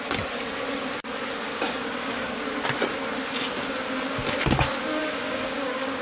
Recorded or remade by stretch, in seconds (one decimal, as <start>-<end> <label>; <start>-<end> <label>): 0.0-1.5 recorded; 1.5-2.4 remade; 2.4-5.0 recorded; 5.0-6.0 remade